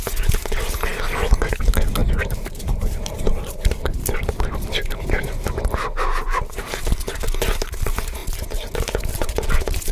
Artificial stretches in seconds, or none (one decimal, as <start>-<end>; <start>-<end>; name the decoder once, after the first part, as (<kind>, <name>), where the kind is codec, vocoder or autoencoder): 2.0-5.6 (vocoder, BigVGAN v2)